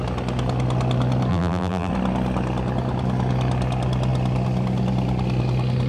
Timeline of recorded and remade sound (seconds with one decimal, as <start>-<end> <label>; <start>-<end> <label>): 0.0-1.3 recorded; 1.3-1.9 remade; 1.9-5.9 recorded